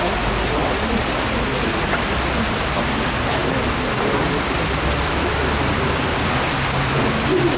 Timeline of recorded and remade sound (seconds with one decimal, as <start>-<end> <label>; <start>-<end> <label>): 0.0-7.6 recorded